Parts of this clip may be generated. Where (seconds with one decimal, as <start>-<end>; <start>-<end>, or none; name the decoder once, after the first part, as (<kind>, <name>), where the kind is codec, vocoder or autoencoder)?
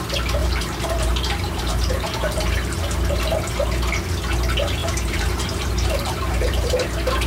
0.4-3.2 (vocoder, BigVGAN v2); 4.8-6.7